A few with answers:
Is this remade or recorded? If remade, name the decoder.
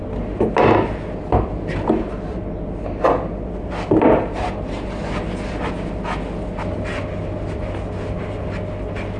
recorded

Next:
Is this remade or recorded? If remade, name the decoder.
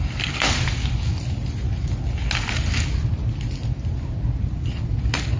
recorded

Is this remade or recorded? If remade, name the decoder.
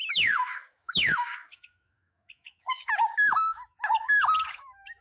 remade, autoencoder, DAC-VAE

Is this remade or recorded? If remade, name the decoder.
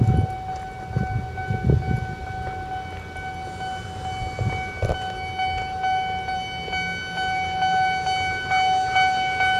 recorded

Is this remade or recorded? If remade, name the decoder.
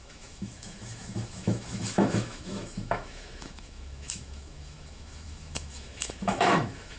remade, autoencoder, DAC-VAE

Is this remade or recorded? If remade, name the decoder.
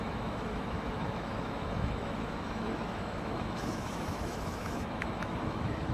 remade, autoencoder, DAC-VAE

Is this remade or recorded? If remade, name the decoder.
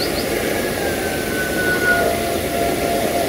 recorded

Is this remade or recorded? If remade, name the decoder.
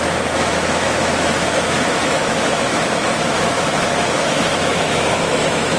remade, autoencoder, DAC-VAE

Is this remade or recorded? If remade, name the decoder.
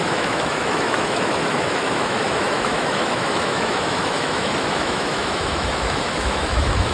remade, autoencoder, DAC-VAE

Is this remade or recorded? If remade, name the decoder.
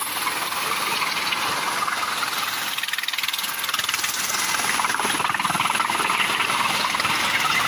recorded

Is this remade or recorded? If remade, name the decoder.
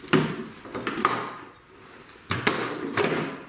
recorded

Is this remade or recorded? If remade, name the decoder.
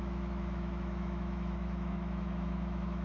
remade, autoencoder, DAC-VAE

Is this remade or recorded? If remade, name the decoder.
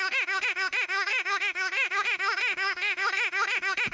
remade, autoencoder, DAC-VAE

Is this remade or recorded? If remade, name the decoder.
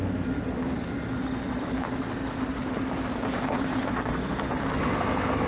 recorded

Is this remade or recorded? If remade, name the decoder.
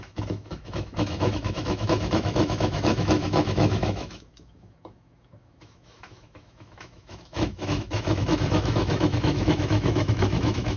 remade, autoencoder, DAC-VAE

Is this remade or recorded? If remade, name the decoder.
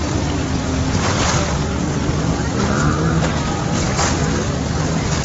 recorded